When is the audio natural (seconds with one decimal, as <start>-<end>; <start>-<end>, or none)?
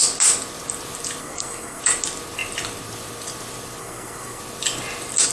0.0-1.2; 1.8-3.8; 4.4-5.3